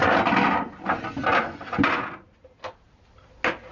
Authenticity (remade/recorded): recorded